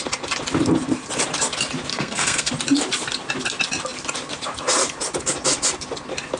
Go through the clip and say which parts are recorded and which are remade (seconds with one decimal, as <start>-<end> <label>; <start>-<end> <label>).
0.0-1.9 recorded; 1.9-2.5 remade; 2.5-6.4 recorded